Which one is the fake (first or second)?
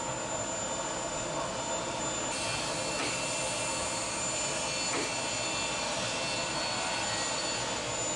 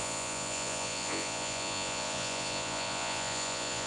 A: second